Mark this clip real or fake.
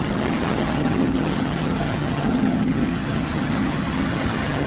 fake